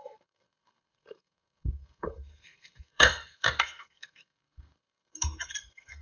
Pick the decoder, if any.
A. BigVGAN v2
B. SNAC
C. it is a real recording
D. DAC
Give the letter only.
B